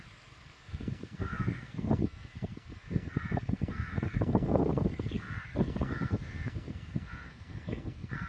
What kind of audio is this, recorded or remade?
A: remade